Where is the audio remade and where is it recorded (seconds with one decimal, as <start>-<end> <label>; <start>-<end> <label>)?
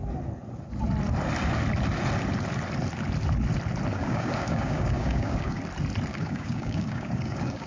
0.0-3.9 recorded; 3.9-5.6 remade; 5.6-6.1 recorded; 6.1-7.7 remade